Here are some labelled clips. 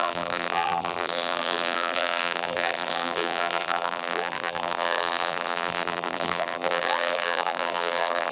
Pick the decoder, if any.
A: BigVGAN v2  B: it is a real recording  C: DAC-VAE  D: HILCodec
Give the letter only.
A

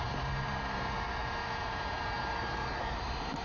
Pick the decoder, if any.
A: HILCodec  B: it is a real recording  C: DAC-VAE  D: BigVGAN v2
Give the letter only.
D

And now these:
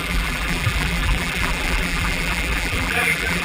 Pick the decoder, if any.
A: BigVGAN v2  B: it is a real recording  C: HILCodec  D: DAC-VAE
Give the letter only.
A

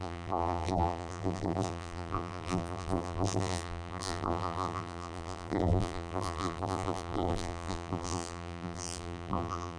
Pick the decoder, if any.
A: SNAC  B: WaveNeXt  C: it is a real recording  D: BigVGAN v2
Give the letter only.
D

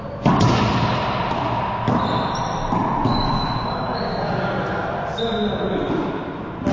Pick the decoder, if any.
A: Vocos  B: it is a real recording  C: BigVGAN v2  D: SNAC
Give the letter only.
B